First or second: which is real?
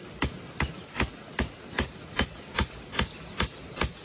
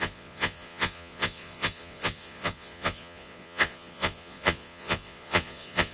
first